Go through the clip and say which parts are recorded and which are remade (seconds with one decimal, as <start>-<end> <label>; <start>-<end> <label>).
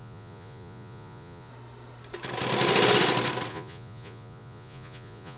0.0-1.5 remade; 1.5-3.5 recorded; 3.5-5.4 remade